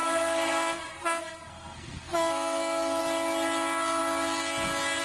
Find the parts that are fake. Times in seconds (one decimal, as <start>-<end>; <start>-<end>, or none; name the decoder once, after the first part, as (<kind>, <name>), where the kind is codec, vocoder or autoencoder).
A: 0.0-3.0 (codec, SNAC)